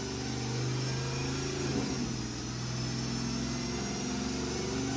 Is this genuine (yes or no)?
yes